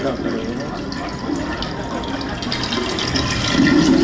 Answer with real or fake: real